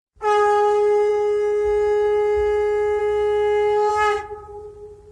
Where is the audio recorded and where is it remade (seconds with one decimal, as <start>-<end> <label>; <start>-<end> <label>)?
0.0-3.0 recorded; 3.0-3.9 remade; 3.9-5.1 recorded